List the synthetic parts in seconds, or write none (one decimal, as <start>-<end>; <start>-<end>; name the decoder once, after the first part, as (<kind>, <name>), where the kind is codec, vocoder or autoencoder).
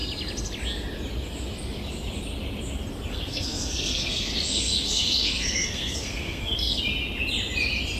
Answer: 3.1-6.8 (codec, SNAC)